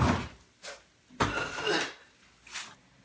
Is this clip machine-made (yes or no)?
no